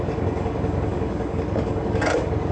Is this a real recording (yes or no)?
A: no